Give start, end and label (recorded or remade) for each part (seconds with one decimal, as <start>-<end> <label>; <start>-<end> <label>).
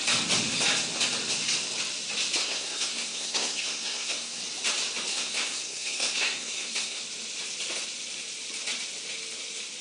0.0-2.4 recorded; 2.4-4.4 remade; 4.4-5.1 recorded; 5.1-7.0 remade; 7.0-9.8 recorded